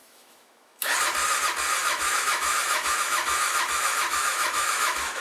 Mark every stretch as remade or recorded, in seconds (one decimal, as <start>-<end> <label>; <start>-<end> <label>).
0.0-0.9 remade; 0.9-1.8 recorded; 1.8-5.2 remade